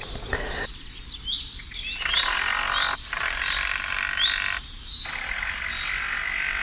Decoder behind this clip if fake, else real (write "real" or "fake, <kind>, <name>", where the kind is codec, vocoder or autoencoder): real